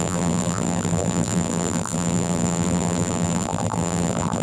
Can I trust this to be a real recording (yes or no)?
no